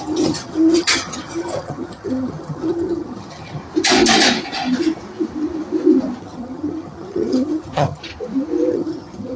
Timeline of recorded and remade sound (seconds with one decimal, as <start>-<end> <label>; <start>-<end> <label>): 0.0-3.6 remade; 3.6-6.2 recorded; 6.2-8.1 remade; 8.1-8.7 recorded; 8.7-9.4 remade